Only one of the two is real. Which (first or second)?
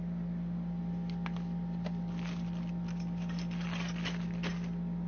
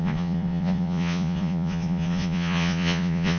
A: first